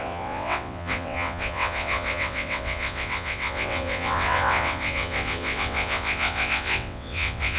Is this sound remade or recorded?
remade